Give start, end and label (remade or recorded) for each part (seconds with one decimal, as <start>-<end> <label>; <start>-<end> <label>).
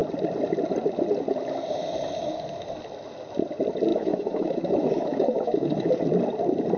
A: 0.0-3.9 recorded; 3.9-5.9 remade; 5.9-6.8 recorded